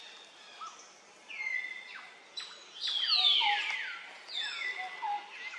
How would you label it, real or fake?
real